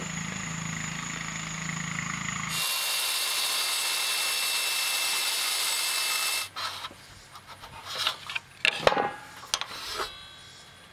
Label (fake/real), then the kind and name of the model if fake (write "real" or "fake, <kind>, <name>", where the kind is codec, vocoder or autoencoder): real